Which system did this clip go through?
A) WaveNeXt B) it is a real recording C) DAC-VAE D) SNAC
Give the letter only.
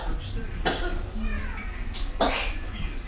B